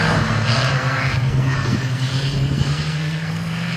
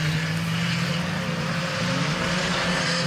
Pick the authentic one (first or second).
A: second